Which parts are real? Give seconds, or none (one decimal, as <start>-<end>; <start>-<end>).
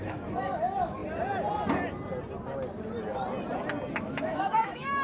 1.0-4.0